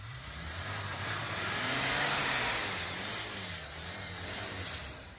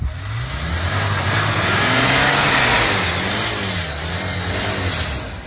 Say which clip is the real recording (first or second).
second